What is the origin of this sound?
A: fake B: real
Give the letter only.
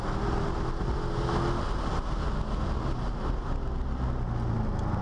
B